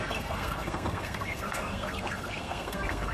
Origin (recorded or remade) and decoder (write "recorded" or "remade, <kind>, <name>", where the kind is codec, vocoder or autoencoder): remade, codec, SNAC